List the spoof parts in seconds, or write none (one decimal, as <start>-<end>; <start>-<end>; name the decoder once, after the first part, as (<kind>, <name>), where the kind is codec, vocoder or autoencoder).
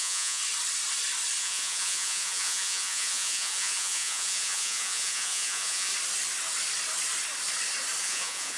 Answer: 0.0-0.4 (vocoder, Vocos); 1.4-5.9; 8.0-8.6